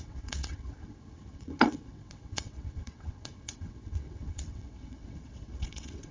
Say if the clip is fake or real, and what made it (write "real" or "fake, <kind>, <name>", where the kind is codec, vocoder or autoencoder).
fake, vocoder, WaveNeXt